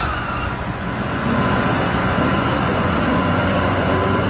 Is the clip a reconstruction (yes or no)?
yes